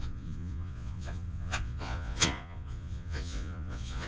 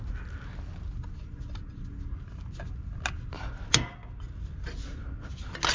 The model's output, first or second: first